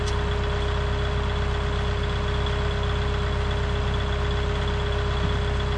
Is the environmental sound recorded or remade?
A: recorded